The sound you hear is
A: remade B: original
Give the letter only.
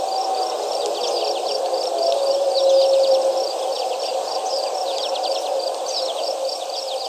B